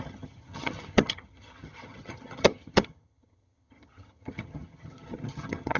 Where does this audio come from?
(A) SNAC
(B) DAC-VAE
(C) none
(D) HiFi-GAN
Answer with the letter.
D